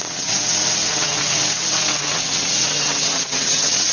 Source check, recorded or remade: remade